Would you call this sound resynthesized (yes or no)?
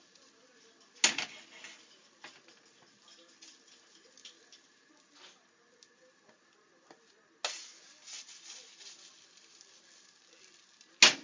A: no